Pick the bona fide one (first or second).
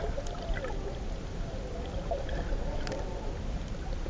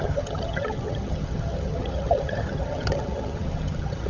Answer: first